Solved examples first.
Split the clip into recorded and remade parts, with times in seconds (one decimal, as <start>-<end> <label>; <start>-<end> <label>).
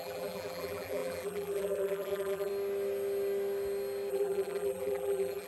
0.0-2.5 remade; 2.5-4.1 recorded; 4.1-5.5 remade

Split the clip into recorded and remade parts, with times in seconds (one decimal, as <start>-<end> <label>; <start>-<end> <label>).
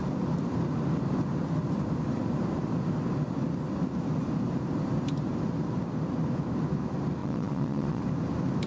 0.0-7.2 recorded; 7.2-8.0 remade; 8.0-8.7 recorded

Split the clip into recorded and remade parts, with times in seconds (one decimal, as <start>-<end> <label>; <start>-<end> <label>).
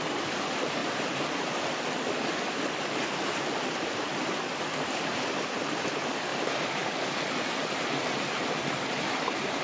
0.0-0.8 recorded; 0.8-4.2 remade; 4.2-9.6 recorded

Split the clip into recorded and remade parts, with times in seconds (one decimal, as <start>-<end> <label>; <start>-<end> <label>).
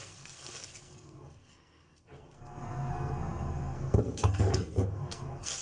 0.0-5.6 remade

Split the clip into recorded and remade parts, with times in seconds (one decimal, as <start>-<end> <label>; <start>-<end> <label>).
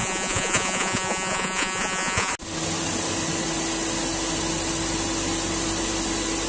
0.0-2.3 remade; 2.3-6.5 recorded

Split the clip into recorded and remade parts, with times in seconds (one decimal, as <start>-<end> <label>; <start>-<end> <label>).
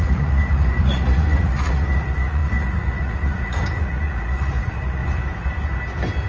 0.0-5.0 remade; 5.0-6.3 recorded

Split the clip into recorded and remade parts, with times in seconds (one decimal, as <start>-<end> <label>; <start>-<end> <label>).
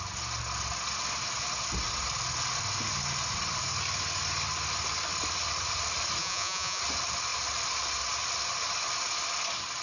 0.0-6.2 recorded; 6.2-6.8 remade; 6.8-9.8 recorded